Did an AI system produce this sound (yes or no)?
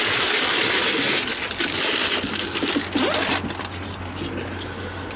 no